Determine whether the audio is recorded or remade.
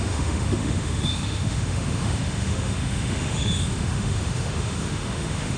remade